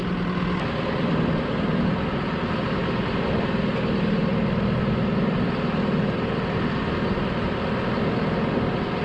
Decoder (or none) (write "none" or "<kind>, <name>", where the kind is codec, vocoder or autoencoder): none